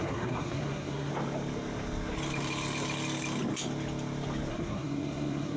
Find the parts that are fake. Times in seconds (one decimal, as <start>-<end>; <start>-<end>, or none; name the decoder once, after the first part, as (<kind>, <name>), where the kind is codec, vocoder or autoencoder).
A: 0.0-1.1 (codec, SNAC); 4.5-5.6